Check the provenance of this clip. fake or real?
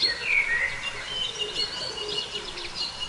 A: real